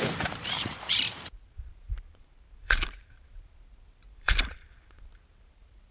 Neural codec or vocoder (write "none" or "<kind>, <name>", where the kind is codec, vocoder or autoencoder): vocoder, BigVGAN v2